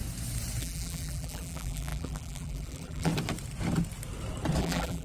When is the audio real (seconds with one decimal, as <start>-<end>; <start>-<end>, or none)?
0.0-0.6; 3.1-4.6